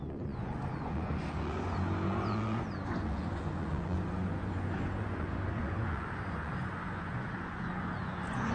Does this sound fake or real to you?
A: fake